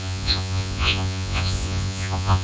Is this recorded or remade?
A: remade